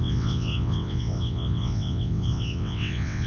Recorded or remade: remade